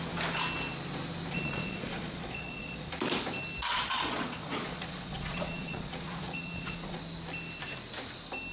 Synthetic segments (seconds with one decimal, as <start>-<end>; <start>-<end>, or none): 1.3-2.9; 3.7-7.0